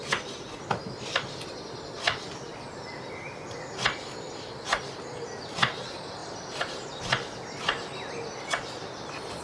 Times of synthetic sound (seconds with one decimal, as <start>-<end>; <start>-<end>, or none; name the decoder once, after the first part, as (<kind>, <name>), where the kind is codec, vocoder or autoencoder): none